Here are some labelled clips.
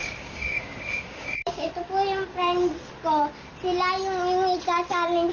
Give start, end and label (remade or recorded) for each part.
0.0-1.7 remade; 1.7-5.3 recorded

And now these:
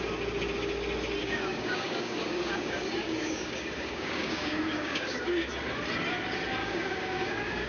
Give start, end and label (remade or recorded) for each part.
0.0-1.2 recorded; 1.2-5.5 remade; 5.5-6.6 recorded; 6.6-7.7 remade